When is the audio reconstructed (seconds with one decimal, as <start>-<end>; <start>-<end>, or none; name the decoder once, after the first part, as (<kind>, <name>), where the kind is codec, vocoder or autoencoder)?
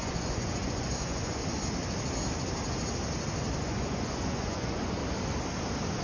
0.0-1.4 (vocoder, Vocos); 3.6-5.0